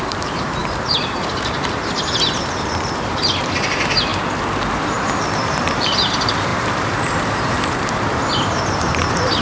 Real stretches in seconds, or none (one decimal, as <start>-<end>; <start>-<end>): 4.1-4.8